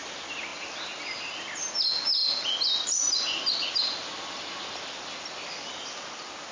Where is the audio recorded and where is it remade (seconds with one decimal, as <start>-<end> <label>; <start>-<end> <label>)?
0.0-6.5 recorded

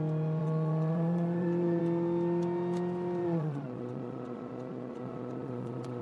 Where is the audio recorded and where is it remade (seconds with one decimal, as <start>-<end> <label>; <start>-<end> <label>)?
0.0-0.4 recorded; 0.4-1.8 remade; 1.8-3.2 recorded; 3.2-6.0 remade

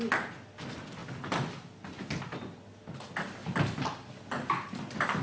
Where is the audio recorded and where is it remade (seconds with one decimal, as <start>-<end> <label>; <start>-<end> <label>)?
0.0-5.2 recorded